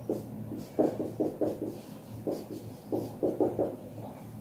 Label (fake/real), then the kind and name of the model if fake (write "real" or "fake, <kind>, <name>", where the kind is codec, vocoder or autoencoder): real